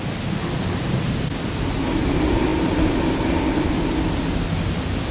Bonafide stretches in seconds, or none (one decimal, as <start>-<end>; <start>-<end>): 0.0-5.1